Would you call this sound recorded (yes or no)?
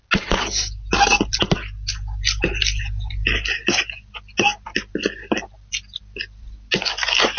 yes